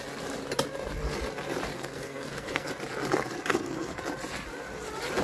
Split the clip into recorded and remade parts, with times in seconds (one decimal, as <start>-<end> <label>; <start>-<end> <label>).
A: 0.0-1.7 recorded; 1.7-2.7 remade; 2.7-3.5 recorded; 3.5-4.0 remade; 4.0-5.2 recorded

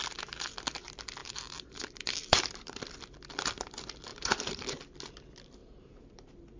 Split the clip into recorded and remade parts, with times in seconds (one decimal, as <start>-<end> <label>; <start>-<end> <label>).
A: 0.0-1.2 recorded; 1.2-2.8 remade; 2.8-4.1 recorded; 4.1-4.8 remade; 4.8-5.6 recorded; 5.6-6.6 remade

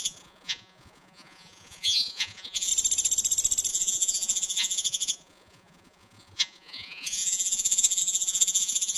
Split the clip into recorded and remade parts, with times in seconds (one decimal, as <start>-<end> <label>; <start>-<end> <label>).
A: 0.0-2.7 remade; 2.7-3.7 recorded; 3.7-9.0 remade

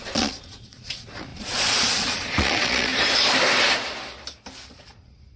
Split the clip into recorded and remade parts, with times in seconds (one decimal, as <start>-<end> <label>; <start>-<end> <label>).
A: 0.0-2.9 remade; 2.9-4.7 recorded; 4.7-5.4 remade

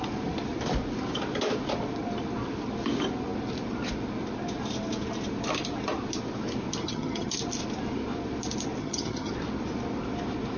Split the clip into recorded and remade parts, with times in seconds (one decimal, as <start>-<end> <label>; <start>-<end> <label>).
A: 0.0-6.8 recorded; 6.8-7.3 remade; 7.3-8.8 recorded; 8.8-9.3 remade; 9.3-10.6 recorded